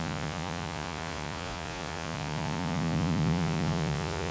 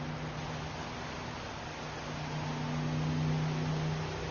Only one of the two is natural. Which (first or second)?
second